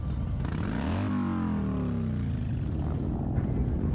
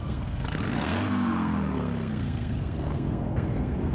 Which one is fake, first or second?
second